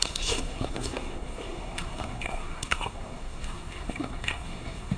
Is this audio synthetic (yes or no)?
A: yes